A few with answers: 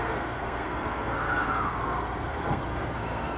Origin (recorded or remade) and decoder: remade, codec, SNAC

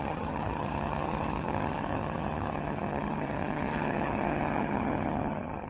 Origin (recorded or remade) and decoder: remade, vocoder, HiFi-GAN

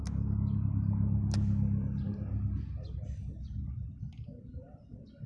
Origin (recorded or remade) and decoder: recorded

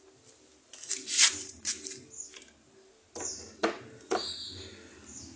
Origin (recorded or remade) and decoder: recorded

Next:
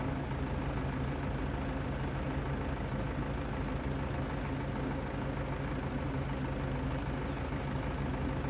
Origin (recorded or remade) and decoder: recorded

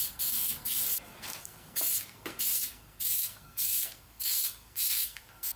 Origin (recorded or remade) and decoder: remade, codec, SNAC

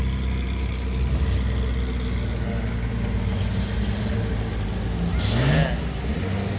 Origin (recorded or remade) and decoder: recorded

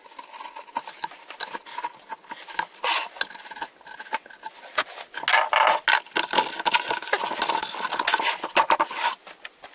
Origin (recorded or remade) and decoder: recorded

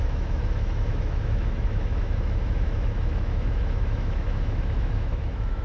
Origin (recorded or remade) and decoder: remade, autoencoder, DAC-VAE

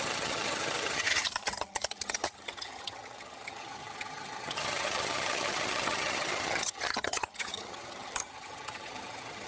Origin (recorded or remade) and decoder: remade, vocoder, HiFi-GAN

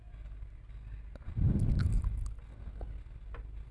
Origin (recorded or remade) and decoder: recorded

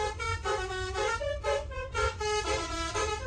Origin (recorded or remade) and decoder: remade, vocoder, Vocos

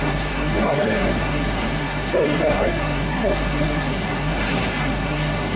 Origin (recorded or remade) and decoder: remade, codec, SNAC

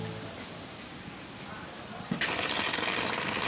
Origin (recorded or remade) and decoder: recorded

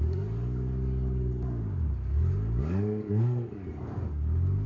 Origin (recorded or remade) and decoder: remade, codec, DAC